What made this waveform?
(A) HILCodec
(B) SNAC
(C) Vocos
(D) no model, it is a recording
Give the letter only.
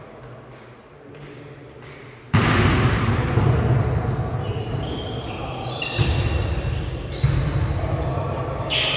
D